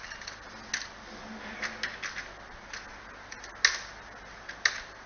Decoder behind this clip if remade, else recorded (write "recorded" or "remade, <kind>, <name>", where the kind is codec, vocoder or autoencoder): recorded